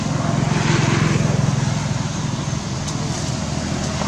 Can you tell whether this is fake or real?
real